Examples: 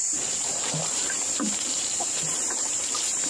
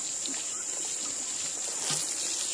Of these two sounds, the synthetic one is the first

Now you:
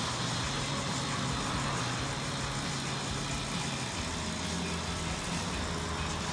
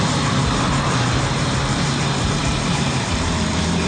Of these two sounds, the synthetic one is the second